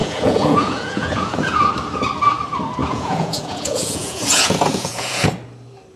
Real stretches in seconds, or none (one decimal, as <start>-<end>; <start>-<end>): 1.7-2.8; 5.3-6.0